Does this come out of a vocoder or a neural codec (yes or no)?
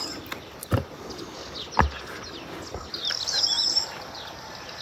no